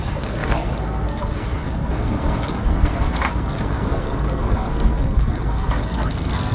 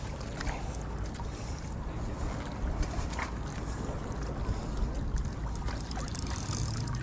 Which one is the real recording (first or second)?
second